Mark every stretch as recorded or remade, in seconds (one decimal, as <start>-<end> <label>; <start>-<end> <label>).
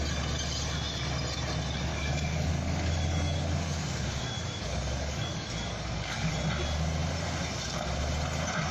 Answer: 0.0-1.9 recorded; 1.9-6.3 remade; 6.3-8.7 recorded